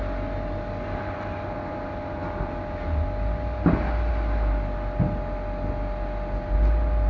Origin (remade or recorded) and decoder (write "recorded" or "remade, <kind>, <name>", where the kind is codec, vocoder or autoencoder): recorded